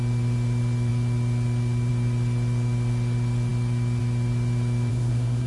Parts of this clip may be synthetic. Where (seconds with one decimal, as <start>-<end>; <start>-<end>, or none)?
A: 4.9-5.5